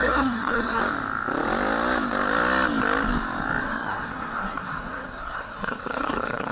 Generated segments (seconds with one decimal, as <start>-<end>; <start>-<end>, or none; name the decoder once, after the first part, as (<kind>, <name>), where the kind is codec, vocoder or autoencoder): 0.0-0.8 (codec, SNAC); 3.6-6.5